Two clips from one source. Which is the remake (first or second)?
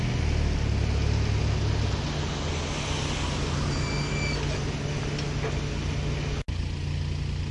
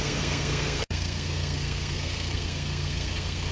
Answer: second